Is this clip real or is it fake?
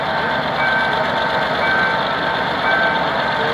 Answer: real